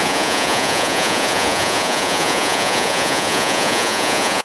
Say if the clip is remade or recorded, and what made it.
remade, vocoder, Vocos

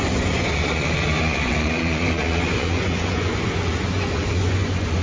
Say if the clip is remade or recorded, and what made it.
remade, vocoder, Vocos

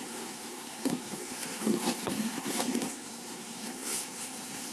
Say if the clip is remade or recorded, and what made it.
remade, codec, SNAC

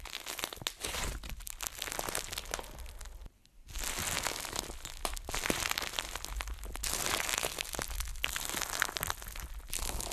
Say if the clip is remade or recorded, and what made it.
recorded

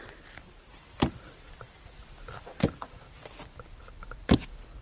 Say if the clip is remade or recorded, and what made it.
recorded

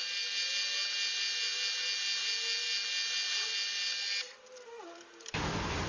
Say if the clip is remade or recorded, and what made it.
recorded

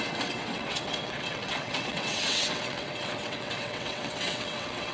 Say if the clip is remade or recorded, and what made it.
remade, vocoder, WaveNeXt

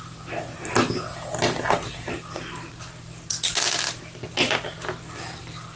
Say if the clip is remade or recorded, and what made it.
recorded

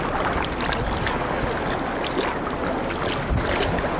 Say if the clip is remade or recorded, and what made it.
recorded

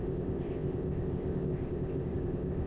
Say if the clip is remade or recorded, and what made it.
remade, codec, ZipCodec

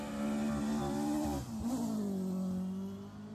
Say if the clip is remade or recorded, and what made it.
recorded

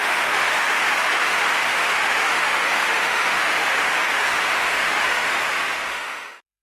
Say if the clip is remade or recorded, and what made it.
remade, autoencoder, DAC-VAE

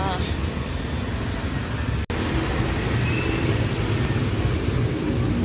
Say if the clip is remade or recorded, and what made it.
recorded